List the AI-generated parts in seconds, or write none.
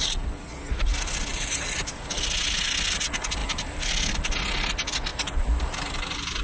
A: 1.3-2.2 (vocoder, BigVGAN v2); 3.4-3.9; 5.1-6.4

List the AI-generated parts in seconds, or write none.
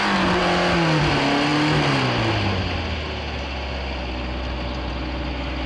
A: none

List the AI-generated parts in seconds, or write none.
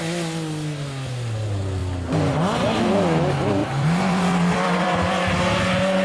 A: 3.6-5.3 (vocoder, BigVGAN v2)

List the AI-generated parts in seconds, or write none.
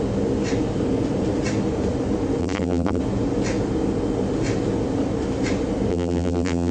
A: 2.4-3.0 (vocoder, BigVGAN v2); 5.9-6.7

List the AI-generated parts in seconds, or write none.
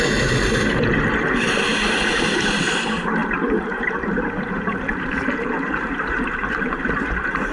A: 0.0-1.6 (vocoder, BigVGAN v2); 2.1-7.5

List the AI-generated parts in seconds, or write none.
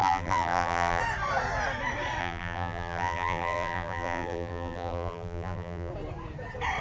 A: 0.0-1.0 (vocoder, BigVGAN v2); 2.2-5.9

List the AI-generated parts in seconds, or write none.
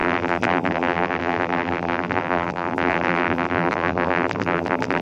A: 0.0-5.0 (vocoder, BigVGAN v2)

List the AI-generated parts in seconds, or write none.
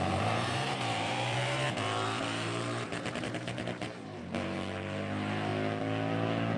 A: 0.0-5.5 (vocoder, BigVGAN v2)